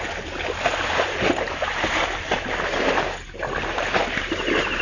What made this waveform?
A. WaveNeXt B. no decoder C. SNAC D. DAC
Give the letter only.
B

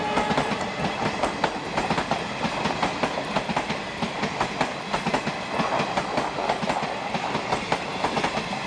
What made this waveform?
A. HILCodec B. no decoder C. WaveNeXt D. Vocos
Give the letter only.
B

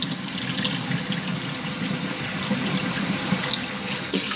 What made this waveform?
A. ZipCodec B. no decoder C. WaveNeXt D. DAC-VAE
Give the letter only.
B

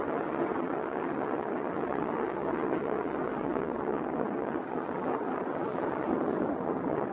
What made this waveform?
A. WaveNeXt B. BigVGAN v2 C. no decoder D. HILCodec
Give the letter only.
A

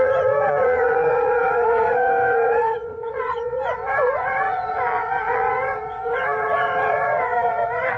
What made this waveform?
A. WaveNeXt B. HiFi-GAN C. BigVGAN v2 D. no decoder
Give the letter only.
A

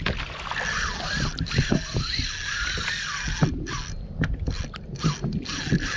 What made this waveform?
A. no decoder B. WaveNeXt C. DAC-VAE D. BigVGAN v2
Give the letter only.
A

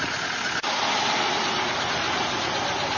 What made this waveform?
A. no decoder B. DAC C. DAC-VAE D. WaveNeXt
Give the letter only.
A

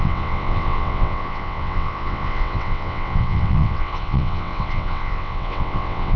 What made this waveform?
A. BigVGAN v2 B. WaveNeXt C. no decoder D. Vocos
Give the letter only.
B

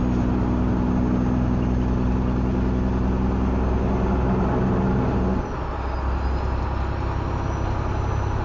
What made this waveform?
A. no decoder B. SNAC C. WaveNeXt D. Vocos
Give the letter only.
A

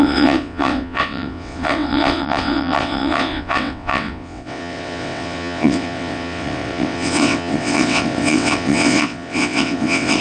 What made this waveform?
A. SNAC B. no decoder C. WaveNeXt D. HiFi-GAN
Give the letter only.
C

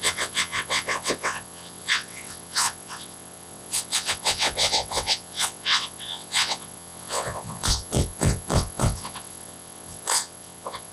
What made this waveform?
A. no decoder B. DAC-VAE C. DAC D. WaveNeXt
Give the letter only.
D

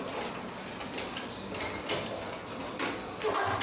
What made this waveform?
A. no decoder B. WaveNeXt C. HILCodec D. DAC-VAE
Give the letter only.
A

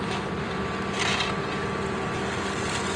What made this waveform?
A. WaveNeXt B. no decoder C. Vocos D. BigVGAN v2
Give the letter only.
B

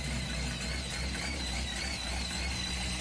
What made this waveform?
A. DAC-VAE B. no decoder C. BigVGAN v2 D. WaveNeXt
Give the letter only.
B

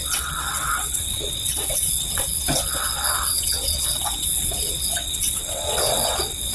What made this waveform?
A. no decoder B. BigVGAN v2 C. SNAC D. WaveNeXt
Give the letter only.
D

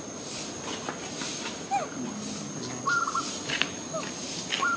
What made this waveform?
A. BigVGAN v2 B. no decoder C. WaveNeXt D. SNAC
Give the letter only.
B